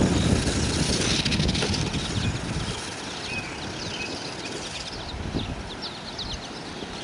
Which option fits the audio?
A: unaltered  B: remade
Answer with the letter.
A